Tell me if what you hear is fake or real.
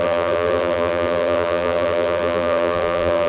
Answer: fake